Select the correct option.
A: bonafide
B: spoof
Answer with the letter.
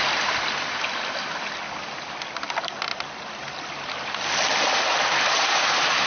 A